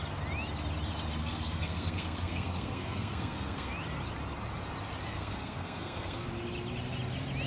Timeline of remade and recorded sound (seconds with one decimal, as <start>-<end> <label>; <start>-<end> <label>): 0.0-1.2 recorded; 1.2-3.7 remade; 3.7-5.1 recorded; 5.1-6.3 remade; 6.3-7.5 recorded